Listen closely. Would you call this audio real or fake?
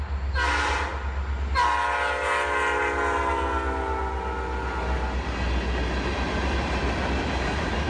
real